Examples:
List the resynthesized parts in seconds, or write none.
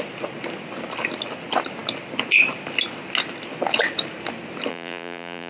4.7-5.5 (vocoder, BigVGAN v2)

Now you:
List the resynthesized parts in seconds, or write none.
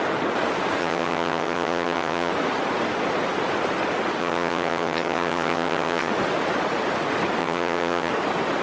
0.8-2.3 (vocoder, HiFi-GAN); 4.2-6.1; 7.4-8.1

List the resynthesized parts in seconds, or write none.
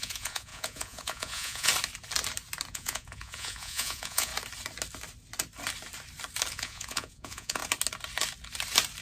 0.0-1.7 (vocoder, Vocos); 2.7-4.3; 6.5-7.6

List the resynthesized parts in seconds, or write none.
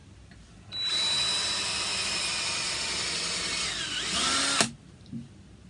none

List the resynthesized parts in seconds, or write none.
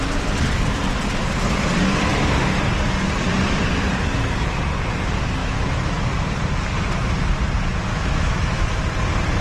5.4-6.0 (autoencoder, DAC-VAE); 7.9-8.6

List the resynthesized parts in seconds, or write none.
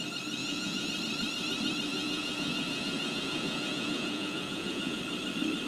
0.4-0.9 (vocoder, Vocos); 1.9-5.0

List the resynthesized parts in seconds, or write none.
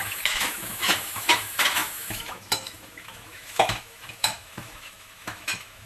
0.0-5.9 (autoencoder, DAC-VAE)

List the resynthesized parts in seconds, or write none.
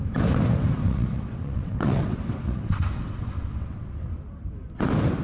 0.8-3.9 (vocoder, WaveNeXt)